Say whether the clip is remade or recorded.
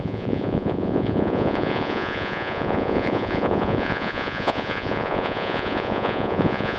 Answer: remade